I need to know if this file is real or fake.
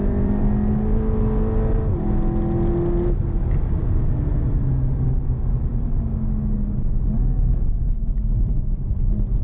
real